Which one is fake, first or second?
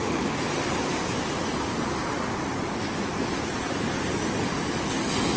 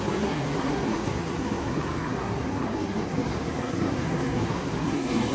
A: second